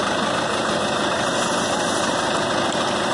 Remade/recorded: recorded